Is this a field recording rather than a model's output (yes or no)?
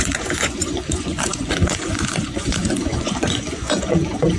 no